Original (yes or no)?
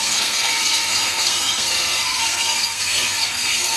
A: no